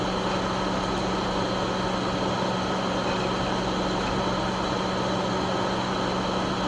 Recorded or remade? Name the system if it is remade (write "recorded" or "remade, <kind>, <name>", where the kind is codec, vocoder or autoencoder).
recorded